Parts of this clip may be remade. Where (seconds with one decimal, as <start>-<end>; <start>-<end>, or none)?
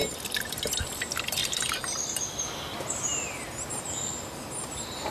0.0-3.1; 3.7-5.1